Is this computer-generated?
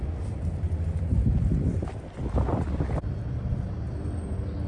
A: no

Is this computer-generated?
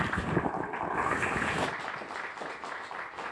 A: no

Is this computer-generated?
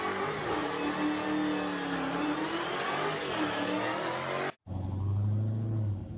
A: no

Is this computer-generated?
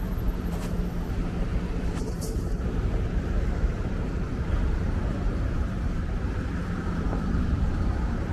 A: yes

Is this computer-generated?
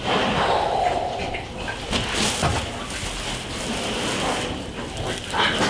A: no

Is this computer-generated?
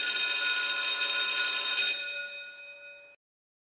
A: no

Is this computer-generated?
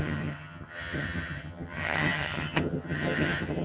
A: yes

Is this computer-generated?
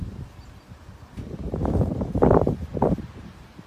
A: yes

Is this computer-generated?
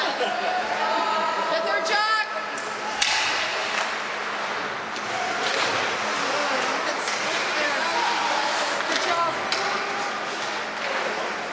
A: no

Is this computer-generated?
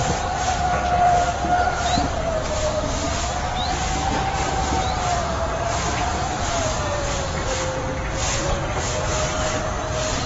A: no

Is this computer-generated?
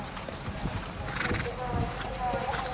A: no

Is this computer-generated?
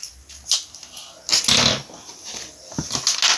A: no